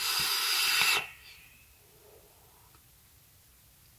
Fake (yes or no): no